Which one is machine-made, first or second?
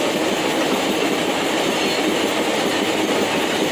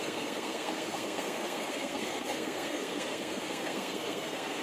second